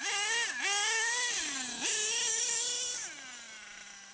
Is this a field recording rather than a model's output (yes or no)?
yes